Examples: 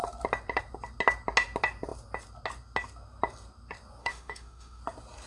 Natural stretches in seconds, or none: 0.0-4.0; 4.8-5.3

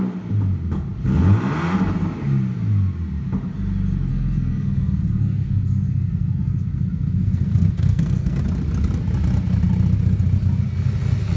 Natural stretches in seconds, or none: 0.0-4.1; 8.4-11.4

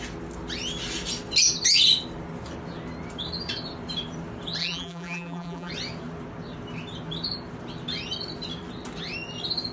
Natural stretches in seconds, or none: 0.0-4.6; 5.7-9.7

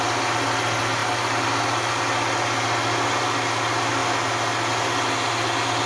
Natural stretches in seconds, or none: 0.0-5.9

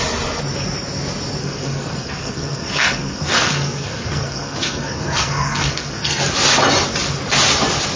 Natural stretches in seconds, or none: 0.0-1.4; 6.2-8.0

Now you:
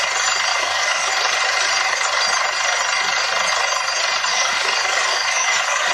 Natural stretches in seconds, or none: 0.0-0.5; 1.1-4.3

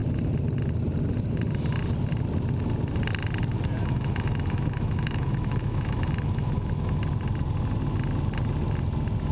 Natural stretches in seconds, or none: 0.0-3.8; 7.0-9.3

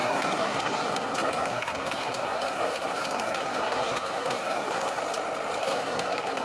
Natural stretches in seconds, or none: 5.0-5.6